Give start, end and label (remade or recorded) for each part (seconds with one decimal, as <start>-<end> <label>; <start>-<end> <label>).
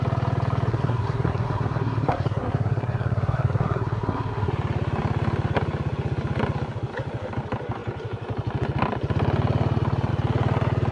0.0-0.7 recorded; 0.7-4.5 remade; 4.5-10.9 recorded